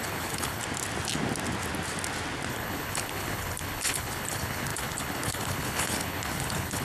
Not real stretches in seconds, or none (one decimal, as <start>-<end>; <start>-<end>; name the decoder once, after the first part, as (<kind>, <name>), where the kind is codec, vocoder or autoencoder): 0.0-0.6 (codec, HILCodec); 2.5-6.8